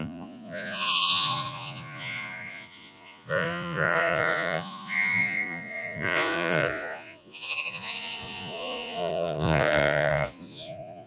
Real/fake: fake